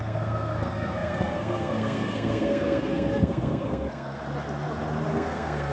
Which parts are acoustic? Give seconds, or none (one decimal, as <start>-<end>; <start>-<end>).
4.2-5.1